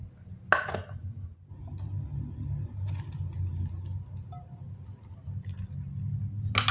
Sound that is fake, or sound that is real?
real